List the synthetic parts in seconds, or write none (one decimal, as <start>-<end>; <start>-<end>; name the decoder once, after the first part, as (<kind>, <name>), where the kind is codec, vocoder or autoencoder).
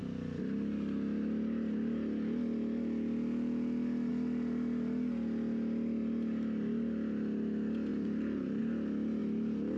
7.9-8.6 (vocoder, BigVGAN v2)